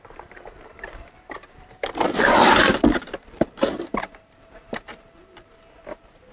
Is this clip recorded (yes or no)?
no